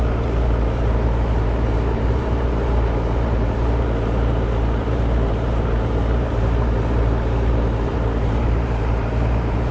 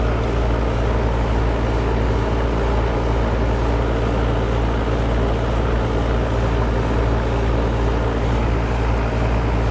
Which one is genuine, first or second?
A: second